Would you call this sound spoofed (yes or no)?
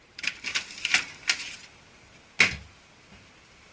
no